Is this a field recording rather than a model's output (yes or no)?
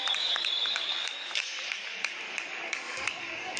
no